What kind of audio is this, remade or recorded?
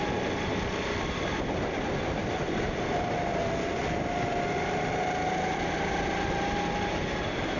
recorded